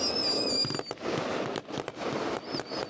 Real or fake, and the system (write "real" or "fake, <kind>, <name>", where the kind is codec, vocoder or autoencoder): real